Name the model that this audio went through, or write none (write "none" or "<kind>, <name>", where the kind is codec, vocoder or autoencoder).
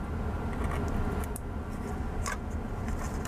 none